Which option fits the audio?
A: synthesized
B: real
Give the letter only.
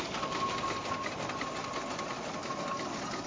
B